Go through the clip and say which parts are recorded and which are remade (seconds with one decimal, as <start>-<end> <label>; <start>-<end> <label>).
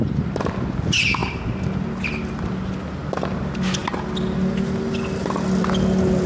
0.0-6.3 recorded